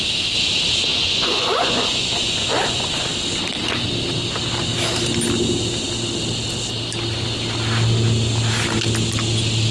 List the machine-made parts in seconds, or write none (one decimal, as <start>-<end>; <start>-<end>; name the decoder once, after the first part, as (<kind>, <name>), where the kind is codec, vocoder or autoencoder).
0.9-3.1 (vocoder, Vocos)